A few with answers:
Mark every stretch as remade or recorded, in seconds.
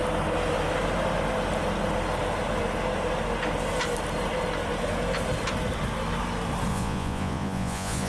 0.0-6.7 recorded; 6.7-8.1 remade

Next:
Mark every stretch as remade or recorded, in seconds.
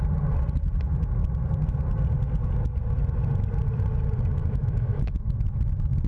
0.0-4.4 recorded; 4.4-5.3 remade; 5.3-6.1 recorded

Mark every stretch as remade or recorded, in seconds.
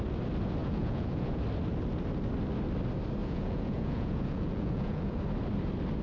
0.0-0.6 recorded; 0.6-1.4 remade; 1.4-3.2 recorded; 3.2-5.2 remade; 5.2-6.0 recorded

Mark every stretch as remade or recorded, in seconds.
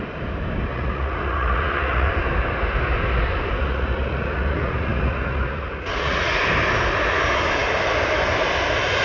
0.0-0.7 recorded; 0.7-2.1 remade; 2.1-3.6 recorded; 3.6-6.4 remade; 6.4-9.0 recorded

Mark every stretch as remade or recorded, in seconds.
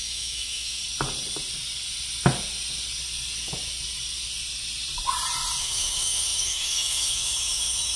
0.0-0.8 remade; 0.8-5.6 recorded; 5.6-8.0 remade